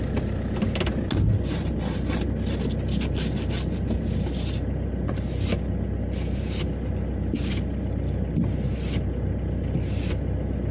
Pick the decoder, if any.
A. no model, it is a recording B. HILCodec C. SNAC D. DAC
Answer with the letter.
A